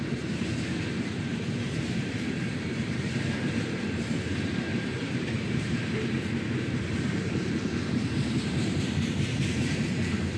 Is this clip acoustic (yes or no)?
no